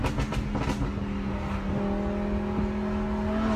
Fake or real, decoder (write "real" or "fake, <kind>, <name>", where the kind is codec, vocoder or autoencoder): real